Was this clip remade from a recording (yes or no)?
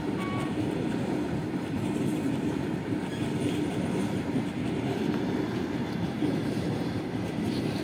yes